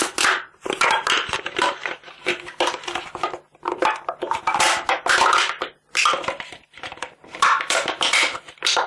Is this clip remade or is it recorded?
recorded